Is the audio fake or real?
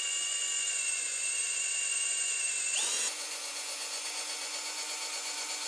fake